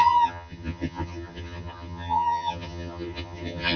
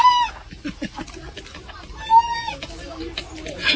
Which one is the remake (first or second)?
first